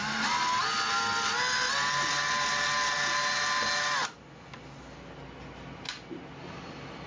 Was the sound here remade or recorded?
recorded